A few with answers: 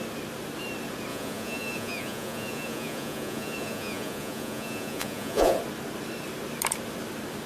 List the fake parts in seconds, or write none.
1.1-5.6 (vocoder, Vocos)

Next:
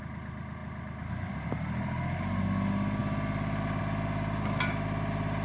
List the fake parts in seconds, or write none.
none

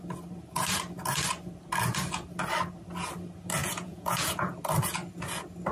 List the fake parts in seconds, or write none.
3.6-4.5 (vocoder, Vocos)